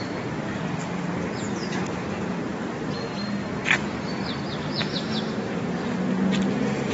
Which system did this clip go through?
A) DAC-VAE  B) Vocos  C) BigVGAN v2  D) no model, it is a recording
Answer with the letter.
D